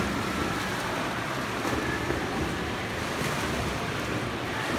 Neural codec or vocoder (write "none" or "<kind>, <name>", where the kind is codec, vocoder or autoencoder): none